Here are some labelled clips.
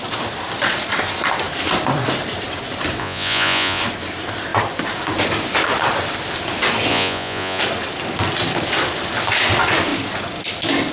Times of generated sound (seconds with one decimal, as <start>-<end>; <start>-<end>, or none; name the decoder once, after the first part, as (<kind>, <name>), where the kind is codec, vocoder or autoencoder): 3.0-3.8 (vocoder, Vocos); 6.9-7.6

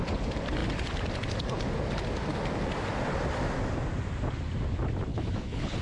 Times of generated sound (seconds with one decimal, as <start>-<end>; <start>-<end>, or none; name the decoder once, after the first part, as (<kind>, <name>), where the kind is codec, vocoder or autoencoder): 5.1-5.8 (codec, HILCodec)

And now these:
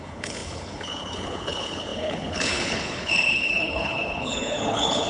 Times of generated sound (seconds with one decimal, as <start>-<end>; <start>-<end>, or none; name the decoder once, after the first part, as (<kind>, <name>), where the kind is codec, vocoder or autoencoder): 0.0-5.1 (codec, HILCodec)

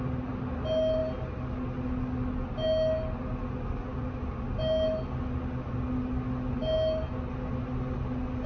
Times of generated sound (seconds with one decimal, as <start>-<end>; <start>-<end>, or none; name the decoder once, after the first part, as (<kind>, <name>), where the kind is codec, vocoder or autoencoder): none

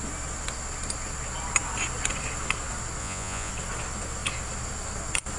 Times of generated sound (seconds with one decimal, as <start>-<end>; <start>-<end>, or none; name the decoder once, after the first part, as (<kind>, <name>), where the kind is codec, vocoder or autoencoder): 3.0-3.5 (vocoder, Vocos)